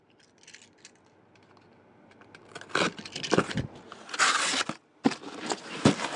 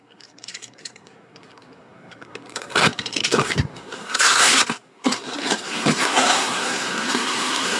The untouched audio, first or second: first